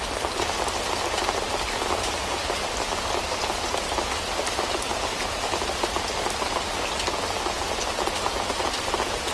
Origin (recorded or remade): recorded